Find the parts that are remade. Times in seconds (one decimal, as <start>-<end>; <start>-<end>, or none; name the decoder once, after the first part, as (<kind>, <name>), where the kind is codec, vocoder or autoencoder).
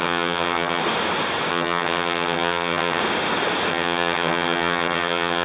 0.0-0.8 (vocoder, HiFi-GAN); 1.5-3.0; 3.7-5.4